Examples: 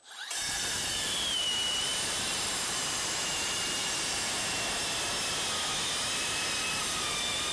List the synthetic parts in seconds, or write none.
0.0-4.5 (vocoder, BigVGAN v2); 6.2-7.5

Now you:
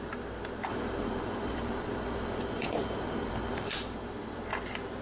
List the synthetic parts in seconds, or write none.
0.7-3.7 (vocoder, BigVGAN v2)

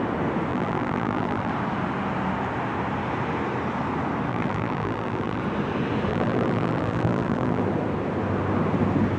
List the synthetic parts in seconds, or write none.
0.5-1.5 (vocoder, BigVGAN v2); 4.3-5.4; 6.1-7.6

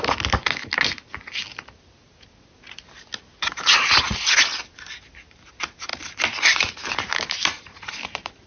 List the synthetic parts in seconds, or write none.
5.9-8.5 (vocoder, BigVGAN v2)

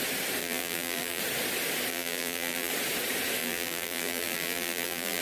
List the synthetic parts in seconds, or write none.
0.4-1.2 (vocoder, BigVGAN v2); 1.9-2.7; 3.4-5.2